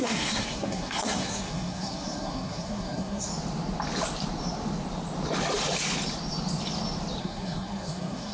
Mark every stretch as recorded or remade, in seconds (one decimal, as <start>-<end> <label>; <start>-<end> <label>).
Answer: 0.0-3.3 remade; 3.3-7.2 recorded; 7.2-8.3 remade